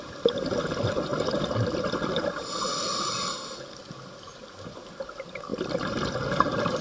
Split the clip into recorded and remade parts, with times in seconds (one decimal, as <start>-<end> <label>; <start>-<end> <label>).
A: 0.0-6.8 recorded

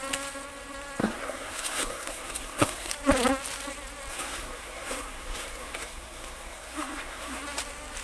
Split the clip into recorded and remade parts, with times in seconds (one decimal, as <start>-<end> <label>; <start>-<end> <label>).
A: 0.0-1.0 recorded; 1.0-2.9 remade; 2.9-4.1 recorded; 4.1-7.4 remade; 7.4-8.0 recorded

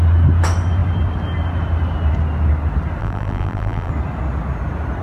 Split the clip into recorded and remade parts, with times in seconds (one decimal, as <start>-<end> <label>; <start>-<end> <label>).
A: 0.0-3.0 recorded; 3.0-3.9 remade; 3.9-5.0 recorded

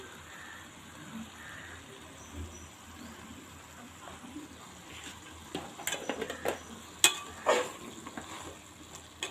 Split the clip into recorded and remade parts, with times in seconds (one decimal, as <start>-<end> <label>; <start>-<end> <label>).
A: 0.0-9.3 recorded

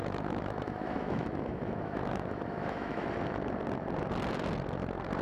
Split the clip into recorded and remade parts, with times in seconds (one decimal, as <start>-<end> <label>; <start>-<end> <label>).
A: 0.0-3.1 remade; 3.1-5.2 recorded

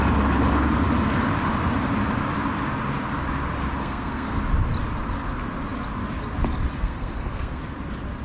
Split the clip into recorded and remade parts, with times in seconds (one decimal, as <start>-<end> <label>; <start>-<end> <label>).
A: 0.0-3.8 recorded; 3.8-4.4 remade; 4.4-6.7 recorded; 6.7-7.6 remade; 7.6-8.2 recorded

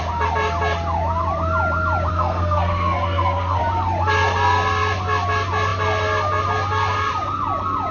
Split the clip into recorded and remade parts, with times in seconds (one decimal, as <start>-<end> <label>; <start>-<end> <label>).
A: 0.0-2.1 recorded; 2.1-3.6 remade; 3.6-7.9 recorded

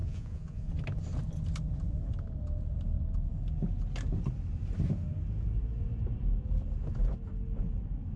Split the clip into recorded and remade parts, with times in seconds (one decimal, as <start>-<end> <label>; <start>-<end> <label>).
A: 0.0-0.7 remade; 0.7-8.2 recorded